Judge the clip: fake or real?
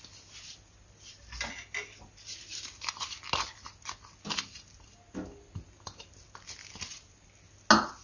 real